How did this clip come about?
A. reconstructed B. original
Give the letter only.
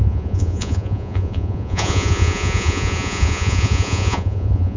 A